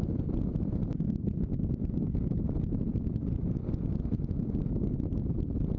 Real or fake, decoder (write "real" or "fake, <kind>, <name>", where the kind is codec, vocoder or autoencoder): real